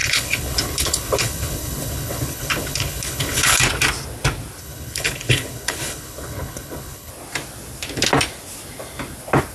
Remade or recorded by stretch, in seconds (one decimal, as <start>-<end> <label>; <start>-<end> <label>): 0.0-3.6 remade; 3.6-4.6 recorded; 4.6-7.1 remade; 7.1-9.5 recorded